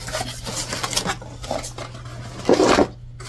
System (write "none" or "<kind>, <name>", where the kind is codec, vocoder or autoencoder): none